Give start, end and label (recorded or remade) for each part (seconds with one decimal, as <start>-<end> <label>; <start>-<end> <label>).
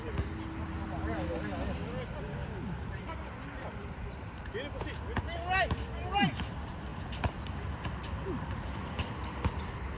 0.0-10.0 recorded